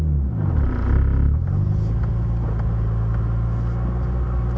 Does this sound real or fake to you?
real